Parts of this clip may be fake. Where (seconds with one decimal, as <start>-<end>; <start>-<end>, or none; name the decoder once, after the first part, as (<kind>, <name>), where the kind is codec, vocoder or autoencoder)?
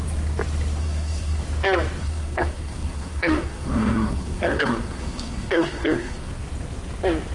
0.8-1.4 (codec, SNAC); 2.0-6.3